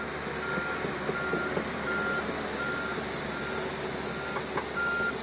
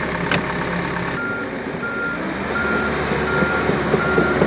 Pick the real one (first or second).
first